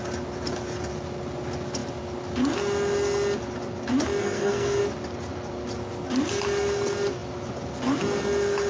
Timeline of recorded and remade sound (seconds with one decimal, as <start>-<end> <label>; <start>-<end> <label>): 0.0-4.2 recorded; 4.2-4.8 remade; 4.8-8.7 recorded